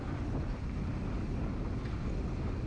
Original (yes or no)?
yes